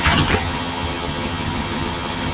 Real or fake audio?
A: fake